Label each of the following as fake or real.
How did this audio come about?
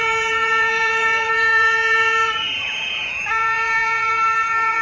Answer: fake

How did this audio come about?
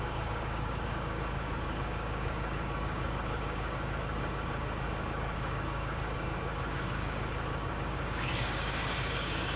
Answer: fake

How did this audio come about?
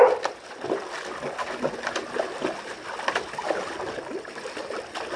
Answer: real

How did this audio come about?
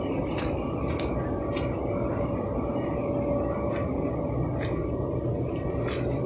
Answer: real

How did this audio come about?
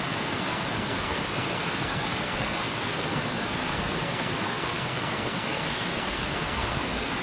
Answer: fake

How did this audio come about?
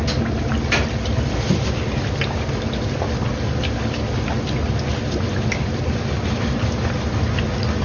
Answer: real